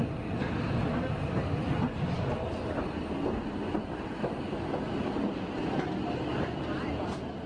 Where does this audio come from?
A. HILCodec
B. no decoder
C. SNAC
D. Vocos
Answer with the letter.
B